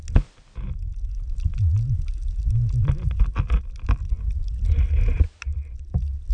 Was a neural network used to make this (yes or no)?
no